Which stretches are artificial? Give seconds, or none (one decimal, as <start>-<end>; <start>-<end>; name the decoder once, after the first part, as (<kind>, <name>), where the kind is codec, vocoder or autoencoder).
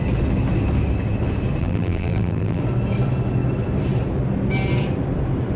1.6-2.6 (vocoder, BigVGAN v2)